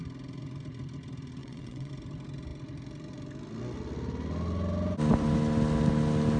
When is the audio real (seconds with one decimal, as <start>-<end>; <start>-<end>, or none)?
0.0-1.4; 1.9-6.4